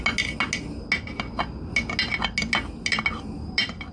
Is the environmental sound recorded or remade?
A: recorded